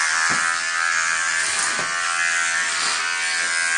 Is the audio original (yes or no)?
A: yes